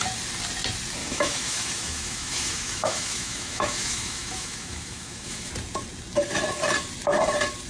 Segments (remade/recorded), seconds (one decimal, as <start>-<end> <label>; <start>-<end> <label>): 0.0-1.0 recorded; 1.0-5.5 remade; 5.5-7.7 recorded